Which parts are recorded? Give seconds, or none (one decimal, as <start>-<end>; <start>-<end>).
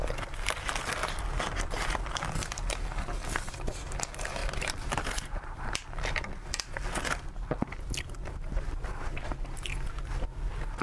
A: 0.0-4.4; 5.7-10.8